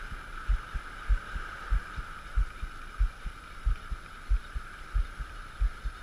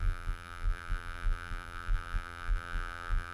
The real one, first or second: first